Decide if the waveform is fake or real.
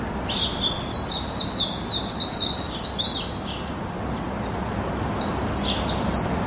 real